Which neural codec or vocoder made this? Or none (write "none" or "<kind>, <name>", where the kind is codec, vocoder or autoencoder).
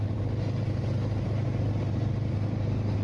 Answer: none